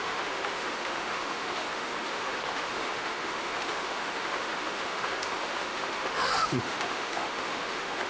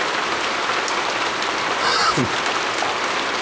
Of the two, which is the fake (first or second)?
first